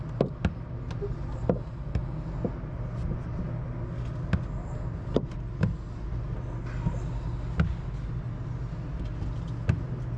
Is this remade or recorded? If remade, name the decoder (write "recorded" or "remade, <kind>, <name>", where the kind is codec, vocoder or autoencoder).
recorded